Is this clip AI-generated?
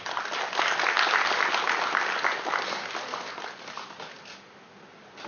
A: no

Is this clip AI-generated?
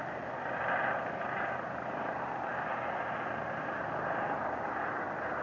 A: no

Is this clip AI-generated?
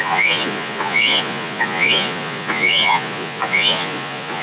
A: yes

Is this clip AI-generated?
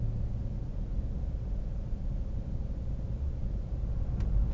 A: no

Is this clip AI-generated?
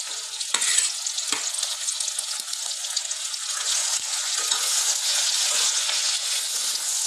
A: yes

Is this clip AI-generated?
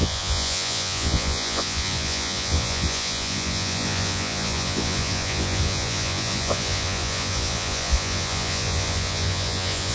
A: yes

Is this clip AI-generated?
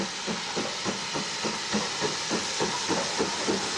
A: no